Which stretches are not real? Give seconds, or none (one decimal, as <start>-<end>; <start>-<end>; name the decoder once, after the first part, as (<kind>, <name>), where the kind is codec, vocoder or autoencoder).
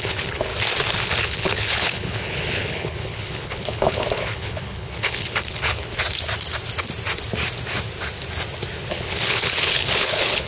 0.0-0.5 (codec, HILCodec); 1.0-5.9; 8.9-10.5